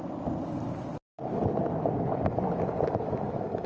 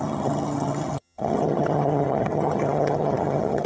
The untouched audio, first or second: first